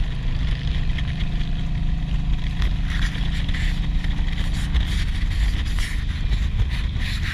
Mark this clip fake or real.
real